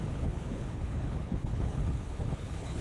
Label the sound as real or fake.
fake